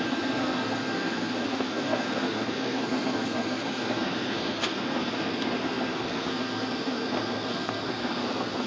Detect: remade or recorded remade